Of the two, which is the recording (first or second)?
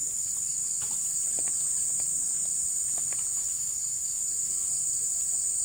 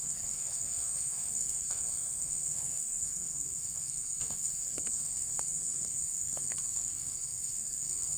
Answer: first